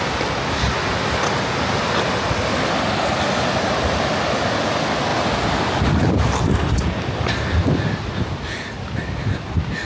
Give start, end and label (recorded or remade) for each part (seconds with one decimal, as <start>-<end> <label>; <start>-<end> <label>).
0.0-9.8 recorded